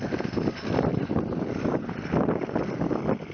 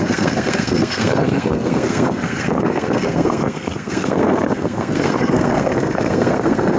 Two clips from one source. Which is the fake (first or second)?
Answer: second